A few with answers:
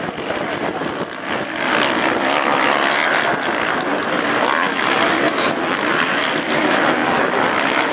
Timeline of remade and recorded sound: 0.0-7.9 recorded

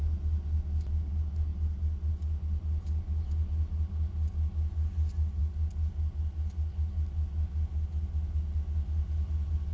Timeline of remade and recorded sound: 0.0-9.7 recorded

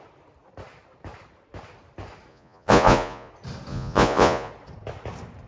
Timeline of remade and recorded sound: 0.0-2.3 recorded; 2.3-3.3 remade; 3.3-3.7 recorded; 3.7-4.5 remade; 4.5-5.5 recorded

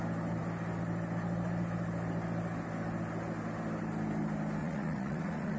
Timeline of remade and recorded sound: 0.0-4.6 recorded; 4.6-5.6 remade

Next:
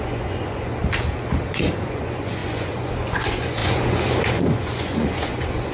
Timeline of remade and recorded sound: 0.0-0.8 remade; 0.8-1.5 recorded; 1.5-5.7 remade